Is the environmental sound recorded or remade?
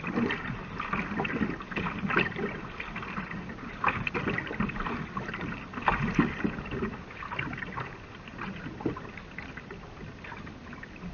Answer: recorded